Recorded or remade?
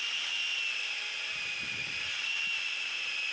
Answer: remade